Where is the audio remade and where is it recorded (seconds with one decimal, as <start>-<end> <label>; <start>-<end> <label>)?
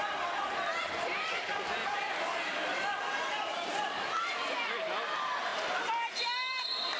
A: 0.0-5.5 remade; 5.5-6.1 recorded; 6.1-7.0 remade